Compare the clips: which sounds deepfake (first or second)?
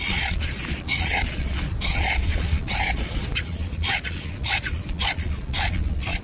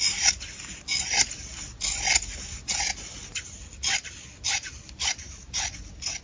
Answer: first